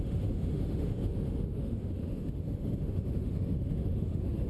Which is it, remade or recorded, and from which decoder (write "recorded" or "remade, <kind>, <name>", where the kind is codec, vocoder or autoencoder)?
remade, autoencoder, DAC-VAE